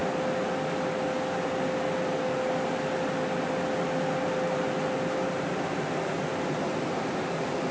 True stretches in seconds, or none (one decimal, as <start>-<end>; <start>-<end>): 0.0-6.3; 6.9-7.7